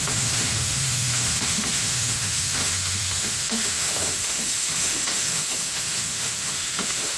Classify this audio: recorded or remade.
remade